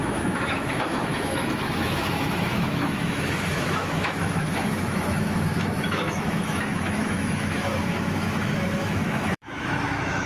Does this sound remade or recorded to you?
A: remade